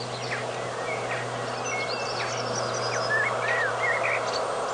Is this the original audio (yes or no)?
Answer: yes